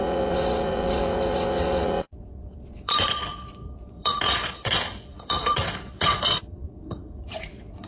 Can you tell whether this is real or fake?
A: fake